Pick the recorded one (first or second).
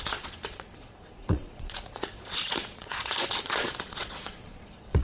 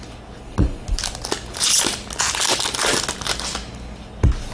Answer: second